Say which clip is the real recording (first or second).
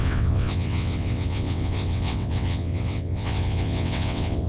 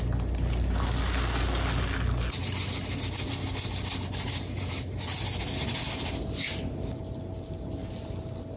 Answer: second